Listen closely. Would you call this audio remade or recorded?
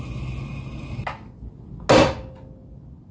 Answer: recorded